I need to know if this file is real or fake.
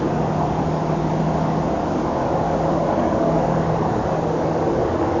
fake